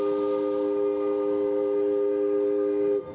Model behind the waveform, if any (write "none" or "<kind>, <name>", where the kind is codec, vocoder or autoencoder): none